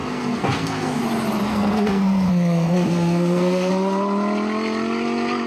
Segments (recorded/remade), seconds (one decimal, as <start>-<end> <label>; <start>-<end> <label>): 0.0-1.0 remade; 1.0-1.5 recorded; 1.5-3.7 remade; 3.7-5.5 recorded